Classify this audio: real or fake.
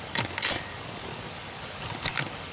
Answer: fake